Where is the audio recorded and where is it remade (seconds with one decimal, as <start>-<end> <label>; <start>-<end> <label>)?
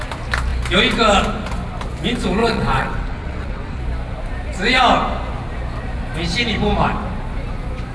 0.0-2.4 recorded; 2.4-3.8 remade; 3.8-7.9 recorded